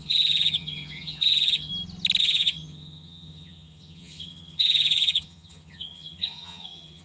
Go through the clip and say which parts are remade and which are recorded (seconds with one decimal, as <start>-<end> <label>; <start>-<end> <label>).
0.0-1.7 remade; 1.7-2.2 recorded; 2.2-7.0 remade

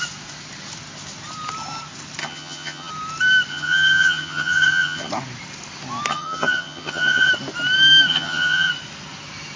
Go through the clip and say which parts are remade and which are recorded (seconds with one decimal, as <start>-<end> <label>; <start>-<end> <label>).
0.0-2.2 recorded; 2.2-2.9 remade; 2.9-3.5 recorded; 3.5-5.1 remade; 5.1-6.1 recorded; 6.1-7.3 remade; 7.3-8.1 recorded; 8.1-8.7 remade; 8.7-9.6 recorded

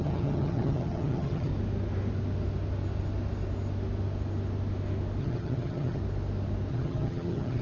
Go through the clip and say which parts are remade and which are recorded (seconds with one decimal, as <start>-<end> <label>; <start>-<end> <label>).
0.0-1.5 remade; 1.5-5.2 recorded; 5.2-6.0 remade; 6.0-6.7 recorded; 6.7-7.6 remade

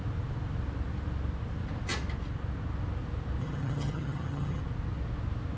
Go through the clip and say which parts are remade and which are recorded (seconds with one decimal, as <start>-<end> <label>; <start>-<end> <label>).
0.0-3.4 recorded; 3.4-4.6 remade; 4.6-5.6 recorded

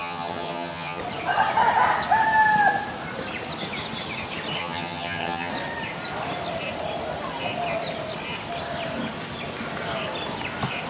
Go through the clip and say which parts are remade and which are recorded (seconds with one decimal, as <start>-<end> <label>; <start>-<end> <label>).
0.0-1.0 remade; 1.0-4.6 recorded; 4.6-5.5 remade; 5.5-10.9 recorded